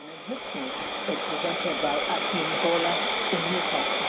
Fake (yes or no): yes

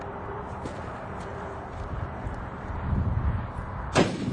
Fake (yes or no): yes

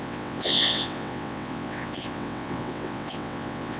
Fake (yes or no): yes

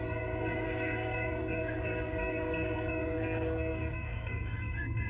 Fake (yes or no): yes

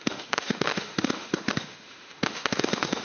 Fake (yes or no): yes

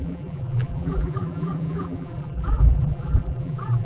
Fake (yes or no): yes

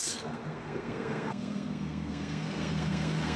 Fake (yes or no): yes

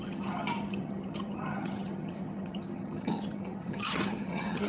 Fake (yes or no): yes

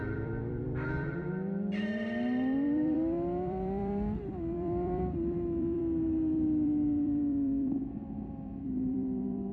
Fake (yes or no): yes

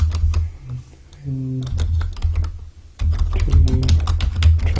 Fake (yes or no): no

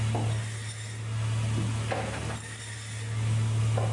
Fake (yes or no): no